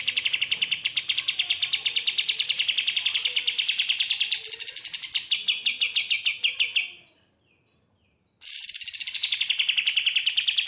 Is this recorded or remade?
recorded